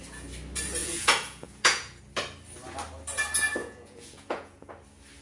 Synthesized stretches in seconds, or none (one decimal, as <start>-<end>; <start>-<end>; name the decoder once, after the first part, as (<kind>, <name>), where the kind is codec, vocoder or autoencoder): 0.8-2.0 (vocoder, Vocos); 3.6-4.7